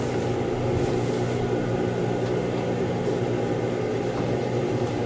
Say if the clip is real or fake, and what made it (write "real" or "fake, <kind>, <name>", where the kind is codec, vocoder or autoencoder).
real